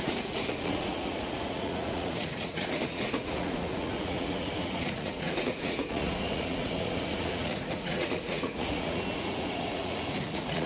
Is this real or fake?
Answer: fake